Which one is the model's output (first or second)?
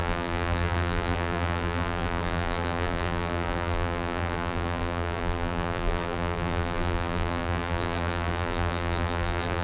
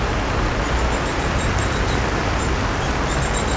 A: first